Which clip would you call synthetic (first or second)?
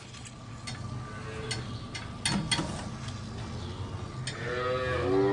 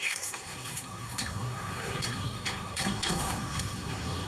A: second